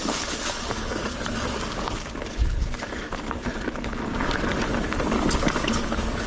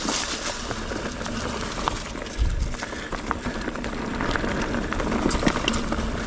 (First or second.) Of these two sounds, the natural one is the second